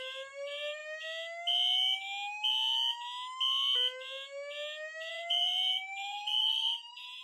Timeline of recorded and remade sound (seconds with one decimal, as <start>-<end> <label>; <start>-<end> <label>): 0.0-0.8 remade; 0.8-5.1 recorded; 5.1-7.2 remade